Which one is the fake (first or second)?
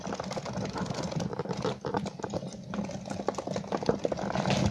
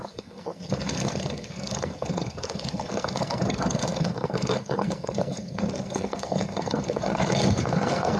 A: second